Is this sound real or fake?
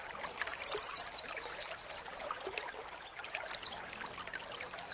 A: real